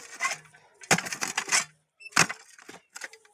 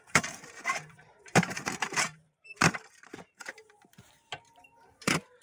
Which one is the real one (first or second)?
first